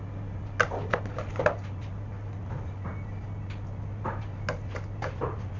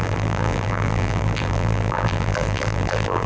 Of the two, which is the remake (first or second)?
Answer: second